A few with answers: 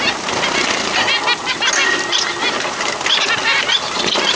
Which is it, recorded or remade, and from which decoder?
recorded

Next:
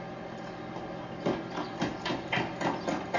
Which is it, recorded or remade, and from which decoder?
recorded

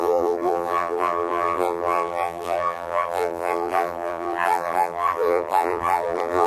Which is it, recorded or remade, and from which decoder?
remade, vocoder, BigVGAN v2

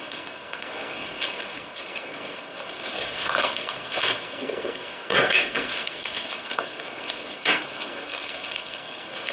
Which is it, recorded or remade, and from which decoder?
remade, codec, SNAC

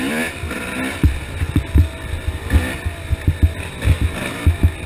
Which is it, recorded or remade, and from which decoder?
recorded